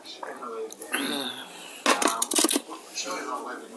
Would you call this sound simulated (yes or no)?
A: no